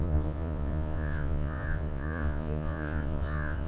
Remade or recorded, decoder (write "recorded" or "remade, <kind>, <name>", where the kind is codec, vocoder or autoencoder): remade, vocoder, Vocos